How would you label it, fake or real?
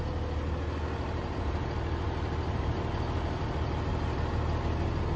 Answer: real